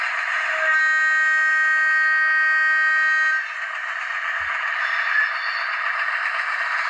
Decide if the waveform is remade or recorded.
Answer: recorded